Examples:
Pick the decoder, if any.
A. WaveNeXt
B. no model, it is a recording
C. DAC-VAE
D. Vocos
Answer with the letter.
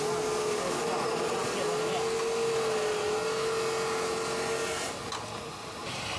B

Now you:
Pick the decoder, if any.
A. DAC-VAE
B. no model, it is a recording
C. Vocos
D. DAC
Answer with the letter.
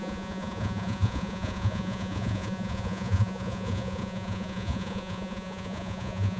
C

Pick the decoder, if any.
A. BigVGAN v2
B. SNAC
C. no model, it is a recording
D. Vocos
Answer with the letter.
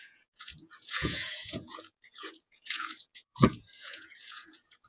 D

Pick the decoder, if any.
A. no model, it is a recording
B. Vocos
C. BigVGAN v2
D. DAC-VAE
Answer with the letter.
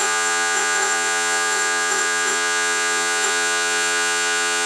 B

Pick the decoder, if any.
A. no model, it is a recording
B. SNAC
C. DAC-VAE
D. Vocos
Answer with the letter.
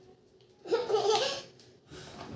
A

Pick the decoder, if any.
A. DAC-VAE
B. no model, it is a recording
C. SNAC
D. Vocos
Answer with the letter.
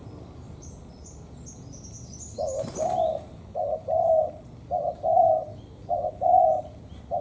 B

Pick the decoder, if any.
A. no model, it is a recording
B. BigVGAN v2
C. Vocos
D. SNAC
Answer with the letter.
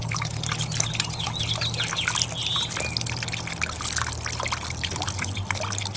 A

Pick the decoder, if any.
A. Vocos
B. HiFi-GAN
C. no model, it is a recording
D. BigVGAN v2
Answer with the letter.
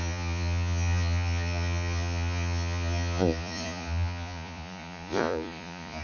A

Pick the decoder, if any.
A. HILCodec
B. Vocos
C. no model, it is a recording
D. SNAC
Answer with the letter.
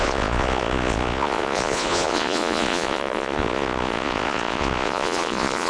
B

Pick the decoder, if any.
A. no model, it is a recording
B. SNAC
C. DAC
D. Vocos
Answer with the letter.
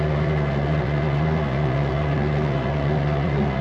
D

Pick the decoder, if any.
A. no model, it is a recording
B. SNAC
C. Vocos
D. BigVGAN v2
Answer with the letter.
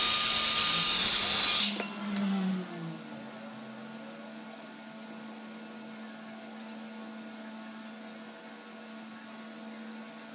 A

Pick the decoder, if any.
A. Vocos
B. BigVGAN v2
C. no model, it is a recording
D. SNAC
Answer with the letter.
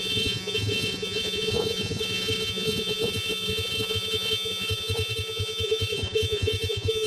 A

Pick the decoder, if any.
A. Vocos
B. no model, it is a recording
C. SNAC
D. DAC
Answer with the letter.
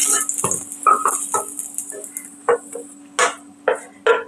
B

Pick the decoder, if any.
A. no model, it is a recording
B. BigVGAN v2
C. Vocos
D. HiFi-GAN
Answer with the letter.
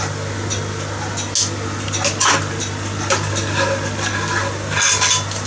A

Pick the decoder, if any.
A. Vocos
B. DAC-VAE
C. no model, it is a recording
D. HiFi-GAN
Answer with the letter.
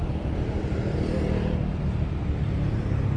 C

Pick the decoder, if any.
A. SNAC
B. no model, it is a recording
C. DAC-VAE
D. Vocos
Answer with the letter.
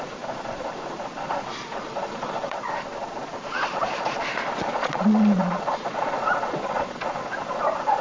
D